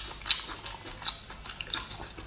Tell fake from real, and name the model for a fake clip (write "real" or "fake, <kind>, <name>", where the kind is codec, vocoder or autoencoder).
real